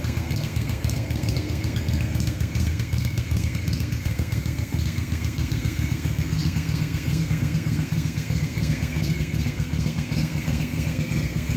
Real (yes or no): no